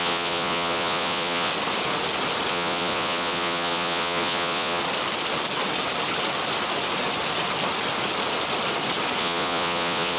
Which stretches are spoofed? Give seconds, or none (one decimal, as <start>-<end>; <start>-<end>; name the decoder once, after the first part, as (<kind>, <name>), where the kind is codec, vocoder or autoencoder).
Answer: 0.0-1.5 (vocoder, Vocos); 2.5-4.8; 9.2-10.2

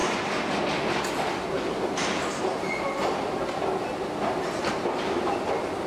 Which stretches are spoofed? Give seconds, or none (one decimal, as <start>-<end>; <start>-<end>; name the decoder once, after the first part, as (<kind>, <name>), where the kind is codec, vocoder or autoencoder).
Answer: none

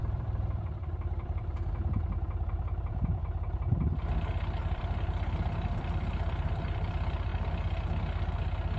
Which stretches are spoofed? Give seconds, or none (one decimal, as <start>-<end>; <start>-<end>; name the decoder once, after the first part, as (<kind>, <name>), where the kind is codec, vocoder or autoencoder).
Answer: 0.0-3.2 (vocoder, BigVGAN v2); 4.6-7.3

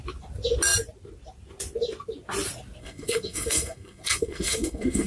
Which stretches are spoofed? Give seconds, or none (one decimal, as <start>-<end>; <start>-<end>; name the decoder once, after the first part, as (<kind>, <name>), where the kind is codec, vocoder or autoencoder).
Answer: 2.8-5.1 (codec, SNAC)

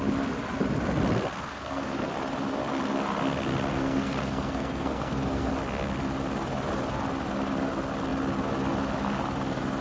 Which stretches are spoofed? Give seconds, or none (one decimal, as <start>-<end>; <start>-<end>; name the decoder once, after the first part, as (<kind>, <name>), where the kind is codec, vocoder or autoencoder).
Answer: 1.5-2.1 (codec, SNAC); 3.7-5.5

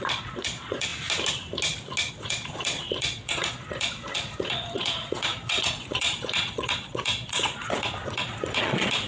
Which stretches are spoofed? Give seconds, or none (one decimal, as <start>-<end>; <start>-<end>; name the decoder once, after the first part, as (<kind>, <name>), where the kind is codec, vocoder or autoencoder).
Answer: 0.0-0.9 (vocoder, Vocos); 2.1-9.1

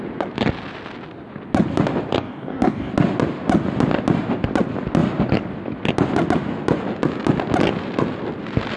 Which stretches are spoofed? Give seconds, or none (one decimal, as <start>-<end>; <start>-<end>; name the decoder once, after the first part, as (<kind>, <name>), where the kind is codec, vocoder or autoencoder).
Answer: 2.2-2.9 (codec, DAC)